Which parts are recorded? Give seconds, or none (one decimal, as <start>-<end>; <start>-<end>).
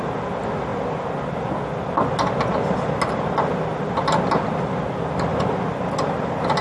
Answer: 0.0-6.6